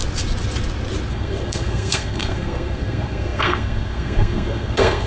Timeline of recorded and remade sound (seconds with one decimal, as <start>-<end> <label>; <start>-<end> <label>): 0.0-1.1 recorded; 1.1-5.1 remade